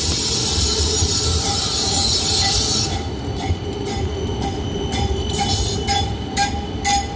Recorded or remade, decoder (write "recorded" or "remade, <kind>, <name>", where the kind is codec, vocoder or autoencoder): recorded